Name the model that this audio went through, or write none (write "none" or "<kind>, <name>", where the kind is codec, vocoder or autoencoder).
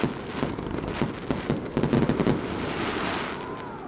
none